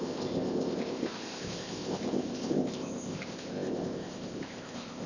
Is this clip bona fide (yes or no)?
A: no